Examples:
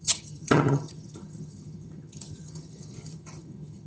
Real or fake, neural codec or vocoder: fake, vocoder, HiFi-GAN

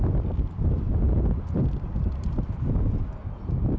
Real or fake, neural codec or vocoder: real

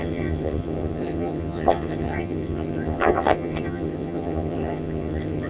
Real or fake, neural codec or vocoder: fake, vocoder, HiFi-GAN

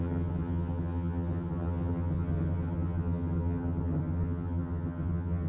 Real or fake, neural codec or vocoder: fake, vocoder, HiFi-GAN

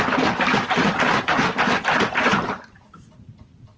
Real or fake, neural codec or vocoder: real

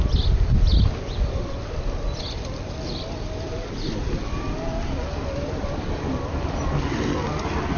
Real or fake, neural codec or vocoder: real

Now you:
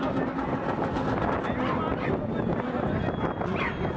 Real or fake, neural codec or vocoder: real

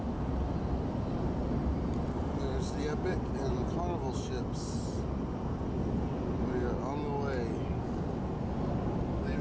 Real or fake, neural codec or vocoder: real